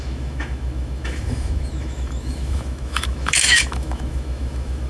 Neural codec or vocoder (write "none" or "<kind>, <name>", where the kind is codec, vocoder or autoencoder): autoencoder, DAC-VAE